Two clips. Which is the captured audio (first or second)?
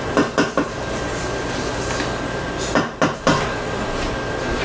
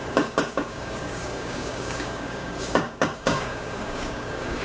first